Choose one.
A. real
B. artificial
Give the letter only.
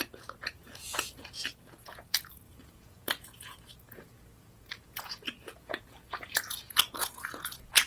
B